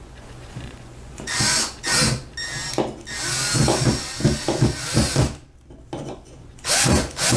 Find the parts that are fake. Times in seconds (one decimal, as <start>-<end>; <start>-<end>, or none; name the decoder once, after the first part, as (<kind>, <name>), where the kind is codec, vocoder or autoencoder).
0.0-1.9 (vocoder, Vocos); 6.0-7.4